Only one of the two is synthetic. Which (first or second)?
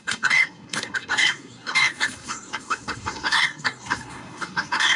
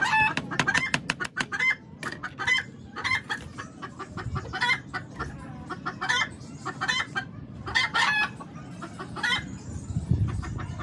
first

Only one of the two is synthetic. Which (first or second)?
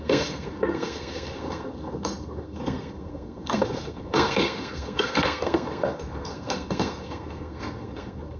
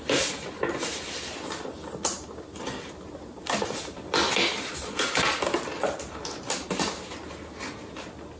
first